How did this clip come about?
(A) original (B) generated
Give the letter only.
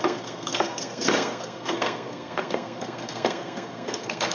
B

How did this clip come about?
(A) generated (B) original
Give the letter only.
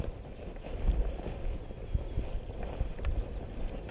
B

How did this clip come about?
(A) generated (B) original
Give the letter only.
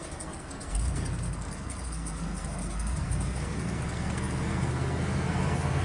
A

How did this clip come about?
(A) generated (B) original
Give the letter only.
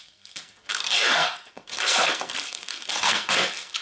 A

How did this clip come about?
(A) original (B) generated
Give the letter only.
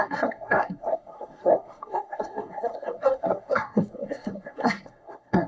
B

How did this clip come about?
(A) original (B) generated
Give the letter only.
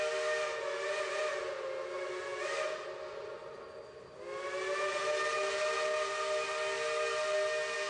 A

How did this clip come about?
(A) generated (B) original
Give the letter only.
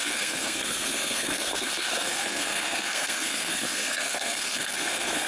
A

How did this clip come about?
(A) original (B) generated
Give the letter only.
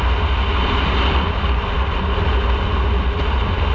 A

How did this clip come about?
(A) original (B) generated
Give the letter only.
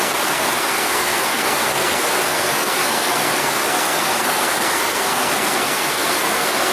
B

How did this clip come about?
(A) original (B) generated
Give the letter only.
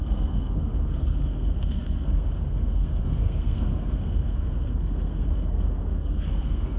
B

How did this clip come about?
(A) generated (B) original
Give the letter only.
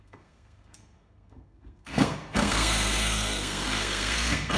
A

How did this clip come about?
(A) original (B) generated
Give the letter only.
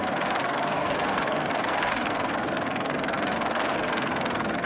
B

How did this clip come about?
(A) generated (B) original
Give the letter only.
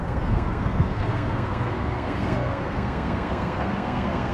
A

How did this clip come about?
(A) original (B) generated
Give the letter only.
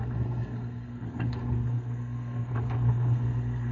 B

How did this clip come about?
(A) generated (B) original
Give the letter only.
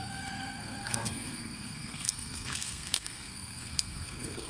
A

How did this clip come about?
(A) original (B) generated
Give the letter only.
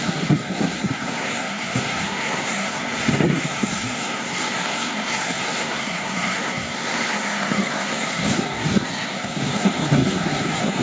B